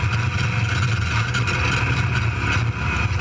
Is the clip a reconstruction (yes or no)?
no